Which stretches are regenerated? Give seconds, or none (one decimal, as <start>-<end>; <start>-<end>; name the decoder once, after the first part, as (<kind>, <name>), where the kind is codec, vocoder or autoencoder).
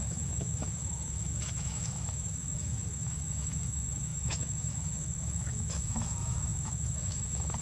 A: 0.0-7.6 (autoencoder, DAC-VAE)